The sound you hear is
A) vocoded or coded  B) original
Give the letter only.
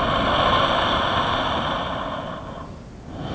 B